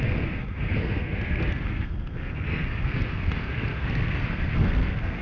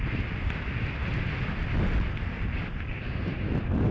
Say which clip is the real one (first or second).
second